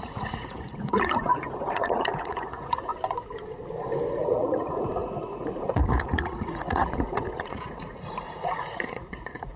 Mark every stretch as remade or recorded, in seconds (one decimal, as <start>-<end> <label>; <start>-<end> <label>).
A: 0.0-2.9 remade; 2.9-4.2 recorded; 4.2-9.6 remade